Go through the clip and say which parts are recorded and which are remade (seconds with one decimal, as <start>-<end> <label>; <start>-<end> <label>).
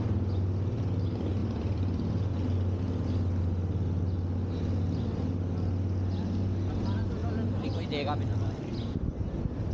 0.0-1.4 recorded; 1.4-2.1 remade; 2.1-7.2 recorded; 7.2-8.9 remade; 8.9-9.7 recorded